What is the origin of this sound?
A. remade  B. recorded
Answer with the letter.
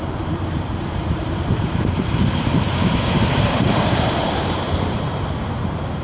A